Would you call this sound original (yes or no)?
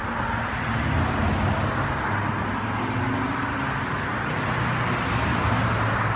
yes